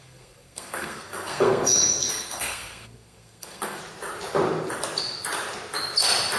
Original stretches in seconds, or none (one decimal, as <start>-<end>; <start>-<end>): 3.8-6.4

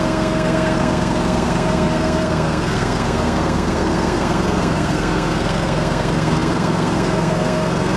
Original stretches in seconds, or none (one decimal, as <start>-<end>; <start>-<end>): none

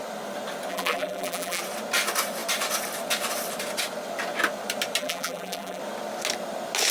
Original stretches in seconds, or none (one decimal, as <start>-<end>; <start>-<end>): 0.0-0.7; 1.6-5.0; 5.8-6.9

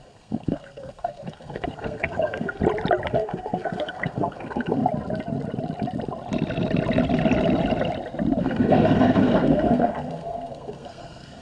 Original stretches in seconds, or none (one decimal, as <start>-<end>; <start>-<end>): 2.6-3.1; 4.8-8.4

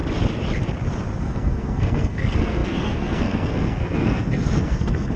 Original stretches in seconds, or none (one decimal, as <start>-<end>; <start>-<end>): 0.0-1.2

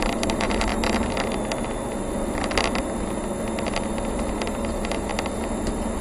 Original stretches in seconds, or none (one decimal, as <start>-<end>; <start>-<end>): 0.7-4.3; 5.1-6.0

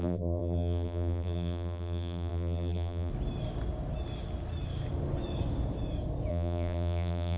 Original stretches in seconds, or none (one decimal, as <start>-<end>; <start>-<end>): 3.1-6.3